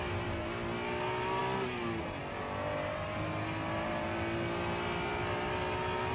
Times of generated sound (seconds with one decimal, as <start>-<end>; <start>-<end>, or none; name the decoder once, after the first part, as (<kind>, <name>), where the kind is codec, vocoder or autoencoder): none